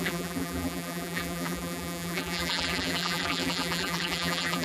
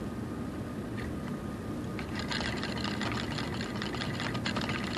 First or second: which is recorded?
second